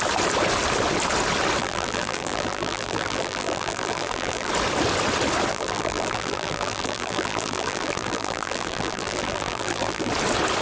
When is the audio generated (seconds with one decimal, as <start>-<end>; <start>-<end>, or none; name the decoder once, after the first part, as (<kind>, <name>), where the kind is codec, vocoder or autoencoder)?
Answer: 1.6-4.5 (vocoder, BigVGAN v2); 5.5-10.1